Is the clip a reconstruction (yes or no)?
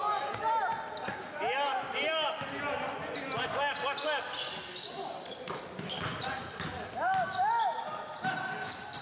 no